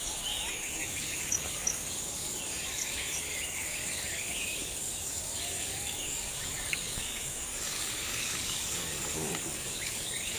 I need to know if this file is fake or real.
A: fake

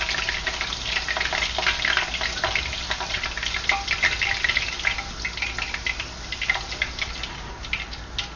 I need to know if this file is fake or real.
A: real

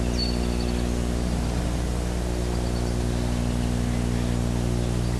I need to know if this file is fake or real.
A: real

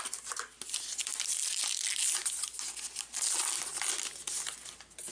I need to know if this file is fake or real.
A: real